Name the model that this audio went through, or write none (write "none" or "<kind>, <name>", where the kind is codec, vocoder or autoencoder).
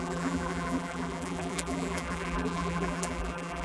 vocoder, BigVGAN v2